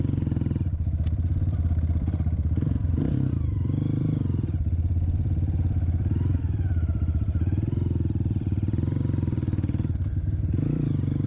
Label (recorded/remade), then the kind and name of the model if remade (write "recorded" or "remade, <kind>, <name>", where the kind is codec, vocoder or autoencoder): remade, vocoder, BigVGAN v2